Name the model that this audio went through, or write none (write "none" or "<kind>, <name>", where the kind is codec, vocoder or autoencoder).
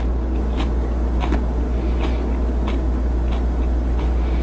none